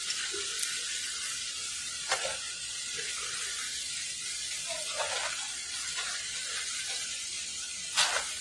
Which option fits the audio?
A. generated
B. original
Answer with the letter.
B